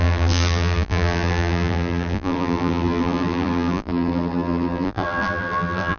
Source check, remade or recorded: remade